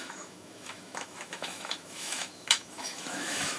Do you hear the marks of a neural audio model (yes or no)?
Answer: yes